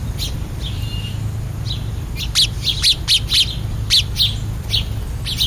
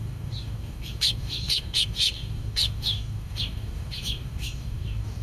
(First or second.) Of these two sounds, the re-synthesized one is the second